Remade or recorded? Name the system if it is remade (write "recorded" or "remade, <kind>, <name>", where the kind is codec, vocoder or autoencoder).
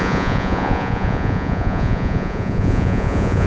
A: remade, vocoder, Vocos